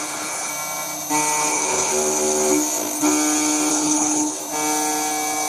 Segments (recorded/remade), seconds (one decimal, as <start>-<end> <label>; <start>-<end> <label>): 0.0-0.5 remade; 0.5-1.5 recorded; 1.5-1.9 remade; 1.9-3.7 recorded; 3.7-4.4 remade; 4.4-5.5 recorded